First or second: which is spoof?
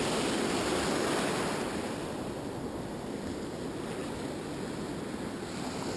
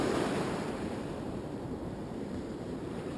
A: second